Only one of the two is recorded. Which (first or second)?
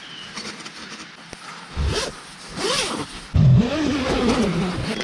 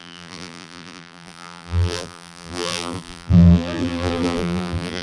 first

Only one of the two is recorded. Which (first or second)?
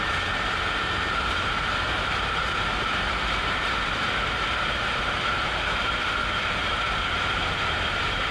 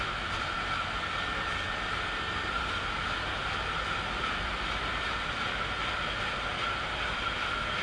second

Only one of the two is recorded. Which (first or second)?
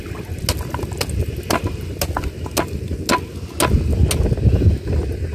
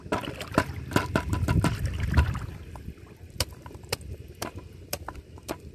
first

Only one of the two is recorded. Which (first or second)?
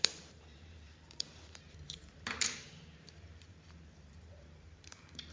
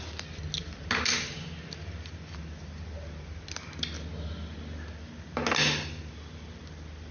second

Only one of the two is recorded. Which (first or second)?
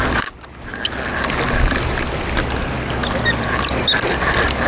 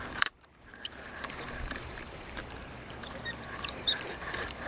first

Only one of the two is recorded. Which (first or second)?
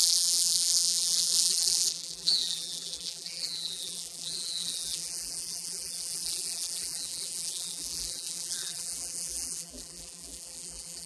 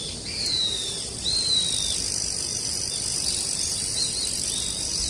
second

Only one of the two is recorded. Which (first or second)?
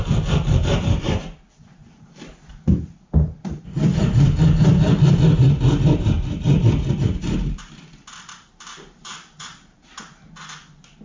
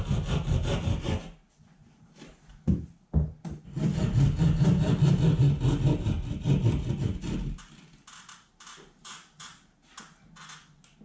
second